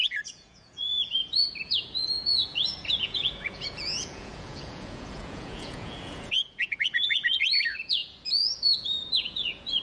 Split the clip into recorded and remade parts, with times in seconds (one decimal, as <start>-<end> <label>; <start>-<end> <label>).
0.0-9.8 remade